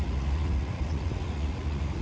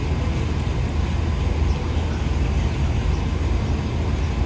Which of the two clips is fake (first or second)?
first